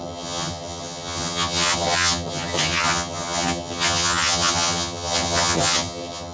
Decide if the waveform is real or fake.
fake